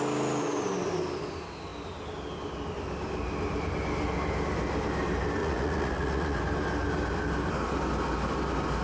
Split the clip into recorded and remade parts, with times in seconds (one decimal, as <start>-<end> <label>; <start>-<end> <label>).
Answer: 0.0-5.4 recorded; 5.4-6.4 remade; 6.4-8.8 recorded